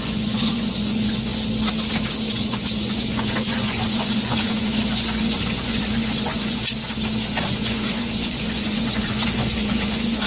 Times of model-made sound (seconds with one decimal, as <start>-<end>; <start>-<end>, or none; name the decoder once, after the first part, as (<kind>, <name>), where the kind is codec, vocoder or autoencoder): 0.0-1.3 (vocoder, Vocos); 2.3-6.6; 7.4-10.3